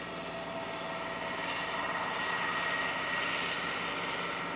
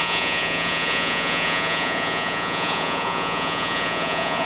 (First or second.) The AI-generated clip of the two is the second